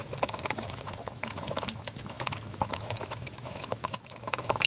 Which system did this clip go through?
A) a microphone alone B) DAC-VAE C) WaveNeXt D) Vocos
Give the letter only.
B